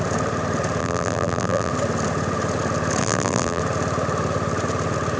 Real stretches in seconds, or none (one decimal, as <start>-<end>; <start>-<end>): 0.0-0.8; 1.7-3.0; 3.6-5.2